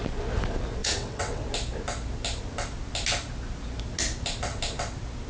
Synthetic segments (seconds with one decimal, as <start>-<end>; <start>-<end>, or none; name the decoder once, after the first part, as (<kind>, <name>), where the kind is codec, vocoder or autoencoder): 0.8-1.4 (vocoder, WaveNeXt)